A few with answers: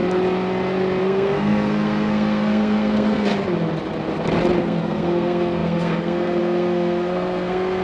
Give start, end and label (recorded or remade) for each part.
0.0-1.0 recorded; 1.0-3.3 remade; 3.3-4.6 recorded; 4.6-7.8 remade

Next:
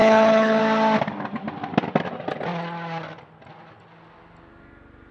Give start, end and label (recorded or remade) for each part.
0.0-0.6 remade; 0.6-5.1 recorded

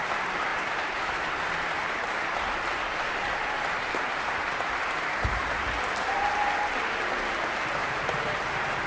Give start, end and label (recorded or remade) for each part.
0.0-0.5 recorded; 0.5-5.4 remade; 5.4-7.8 recorded; 7.8-8.9 remade

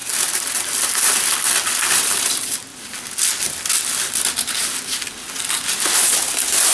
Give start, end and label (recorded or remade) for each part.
0.0-2.2 remade; 2.2-6.7 recorded

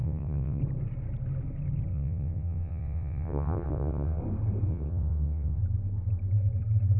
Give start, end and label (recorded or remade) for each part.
0.0-0.6 remade; 0.6-1.9 recorded; 1.9-4.2 remade; 4.2-4.7 recorded; 4.7-5.6 remade; 5.6-7.0 recorded

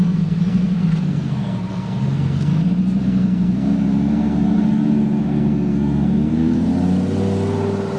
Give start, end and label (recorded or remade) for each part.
0.0-2.5 remade; 2.5-3.0 recorded; 3.0-6.7 remade; 6.7-8.0 recorded

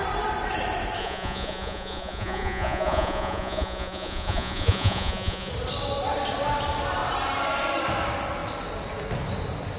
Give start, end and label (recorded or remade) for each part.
0.0-1.0 recorded; 1.0-5.5 remade; 5.5-9.8 recorded